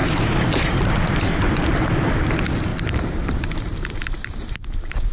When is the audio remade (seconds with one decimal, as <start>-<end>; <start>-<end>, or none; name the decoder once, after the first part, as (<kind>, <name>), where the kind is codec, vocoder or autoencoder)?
0.0-0.9 (vocoder, BigVGAN v2); 2.7-5.1